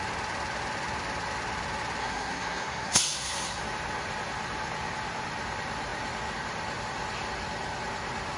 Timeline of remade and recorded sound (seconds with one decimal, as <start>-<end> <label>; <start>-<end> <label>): 0.0-2.0 recorded; 2.0-3.6 remade; 3.6-8.4 recorded